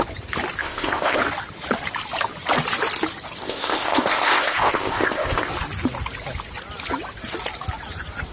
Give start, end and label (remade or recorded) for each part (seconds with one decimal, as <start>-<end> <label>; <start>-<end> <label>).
0.0-0.6 recorded; 0.6-1.2 remade; 1.2-3.4 recorded; 3.4-5.5 remade; 5.5-8.3 recorded